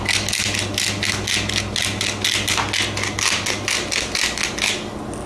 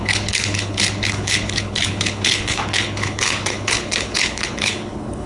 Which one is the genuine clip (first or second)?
first